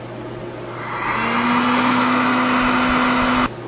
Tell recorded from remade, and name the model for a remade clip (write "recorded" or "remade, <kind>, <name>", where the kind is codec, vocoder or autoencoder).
recorded